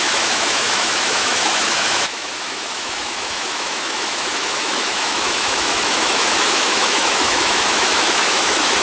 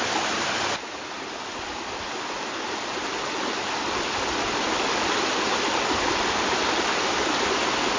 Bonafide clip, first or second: second